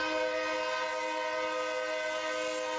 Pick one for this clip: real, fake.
real